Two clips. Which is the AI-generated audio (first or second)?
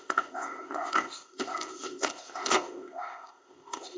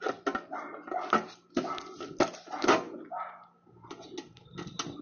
first